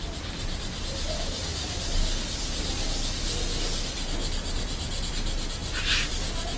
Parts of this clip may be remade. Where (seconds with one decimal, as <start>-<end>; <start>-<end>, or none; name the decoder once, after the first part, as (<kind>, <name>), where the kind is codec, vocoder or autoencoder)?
none